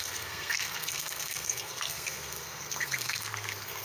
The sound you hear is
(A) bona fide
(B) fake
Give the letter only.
B